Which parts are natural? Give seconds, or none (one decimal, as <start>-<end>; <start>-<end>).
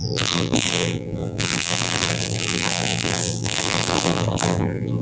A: none